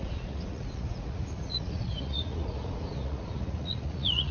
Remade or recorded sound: remade